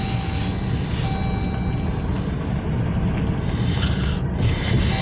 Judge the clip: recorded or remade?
recorded